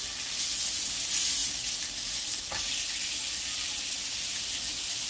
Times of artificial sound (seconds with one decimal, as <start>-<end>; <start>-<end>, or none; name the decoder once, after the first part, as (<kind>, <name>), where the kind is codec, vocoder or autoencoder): none

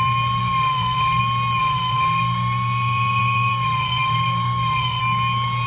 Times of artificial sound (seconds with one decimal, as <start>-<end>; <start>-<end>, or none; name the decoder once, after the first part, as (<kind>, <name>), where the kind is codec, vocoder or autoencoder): 0.4-1.2 (autoencoder, DAC-VAE); 1.6-5.0